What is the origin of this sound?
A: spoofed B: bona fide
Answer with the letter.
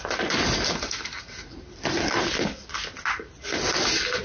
B